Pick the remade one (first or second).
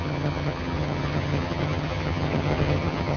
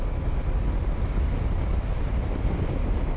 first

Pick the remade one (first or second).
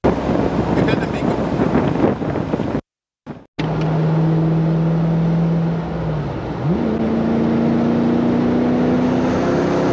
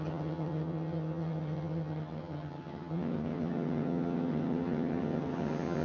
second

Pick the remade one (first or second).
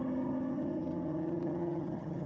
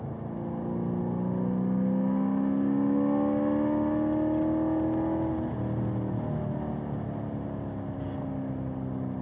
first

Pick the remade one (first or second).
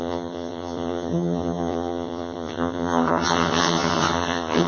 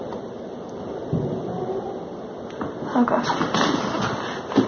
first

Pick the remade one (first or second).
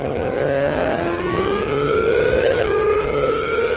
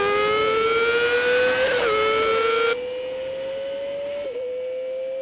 first